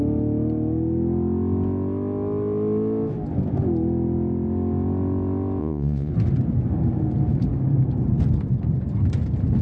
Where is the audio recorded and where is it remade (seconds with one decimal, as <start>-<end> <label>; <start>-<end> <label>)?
0.0-5.6 recorded; 5.6-6.1 remade; 6.1-9.6 recorded